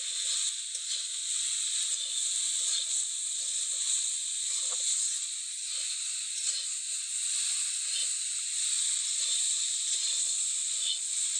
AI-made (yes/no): no